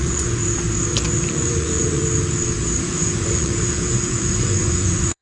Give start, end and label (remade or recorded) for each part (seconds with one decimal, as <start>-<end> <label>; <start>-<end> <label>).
0.0-0.4 remade; 0.4-1.3 recorded; 1.3-2.0 remade; 2.0-2.8 recorded; 2.8-5.2 remade